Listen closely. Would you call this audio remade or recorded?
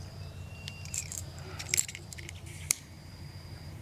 remade